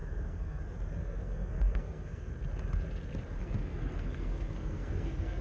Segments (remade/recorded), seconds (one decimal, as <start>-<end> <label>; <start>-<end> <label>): 0.0-0.6 remade; 0.6-1.0 recorded; 1.0-2.3 remade; 2.3-3.4 recorded; 3.4-5.4 remade